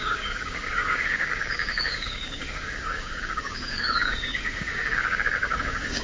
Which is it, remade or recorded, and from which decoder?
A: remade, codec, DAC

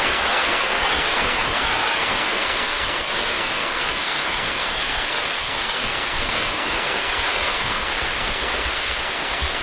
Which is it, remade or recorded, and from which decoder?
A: remade, codec, SNAC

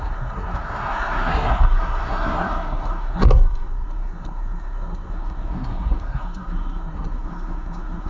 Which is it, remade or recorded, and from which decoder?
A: remade, codec, SNAC